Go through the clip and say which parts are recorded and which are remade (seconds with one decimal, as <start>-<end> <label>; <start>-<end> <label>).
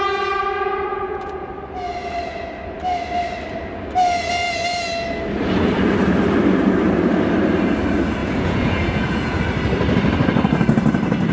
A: 0.0-0.9 recorded; 0.9-1.5 remade; 1.5-8.2 recorded; 8.2-9.4 remade; 9.4-11.3 recorded